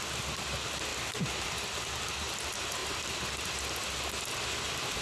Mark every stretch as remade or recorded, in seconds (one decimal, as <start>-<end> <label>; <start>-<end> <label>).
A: 0.0-0.9 recorded; 0.9-1.9 remade; 1.9-5.0 recorded